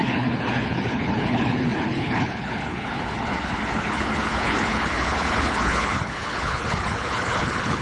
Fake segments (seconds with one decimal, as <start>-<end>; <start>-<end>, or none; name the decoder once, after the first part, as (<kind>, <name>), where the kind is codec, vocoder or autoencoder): 0.0-7.8 (codec, HILCodec)